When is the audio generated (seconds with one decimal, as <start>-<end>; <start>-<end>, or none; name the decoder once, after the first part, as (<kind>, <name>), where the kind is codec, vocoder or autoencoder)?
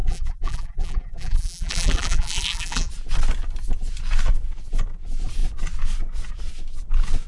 0.0-2.9 (vocoder, BigVGAN v2)